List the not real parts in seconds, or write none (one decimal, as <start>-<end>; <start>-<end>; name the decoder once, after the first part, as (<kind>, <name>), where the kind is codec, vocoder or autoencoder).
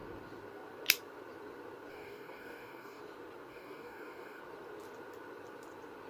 1.9-3.0 (codec, DAC); 3.5-4.4